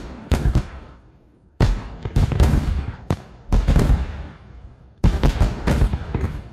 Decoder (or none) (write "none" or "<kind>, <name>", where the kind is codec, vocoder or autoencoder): codec, DAC